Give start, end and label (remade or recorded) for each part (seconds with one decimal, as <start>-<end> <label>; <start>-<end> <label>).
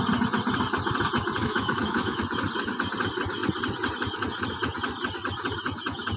0.0-1.4 recorded; 1.4-2.2 remade; 2.2-6.2 recorded